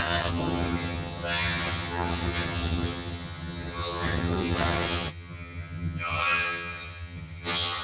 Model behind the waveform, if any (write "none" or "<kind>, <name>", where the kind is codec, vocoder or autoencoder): vocoder, HiFi-GAN